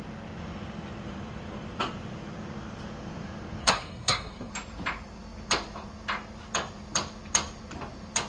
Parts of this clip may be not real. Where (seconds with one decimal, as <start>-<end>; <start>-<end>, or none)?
3.6-4.5